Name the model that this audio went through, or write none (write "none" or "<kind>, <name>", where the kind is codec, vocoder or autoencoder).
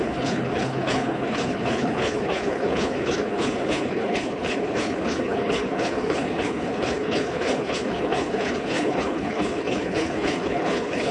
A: codec, HILCodec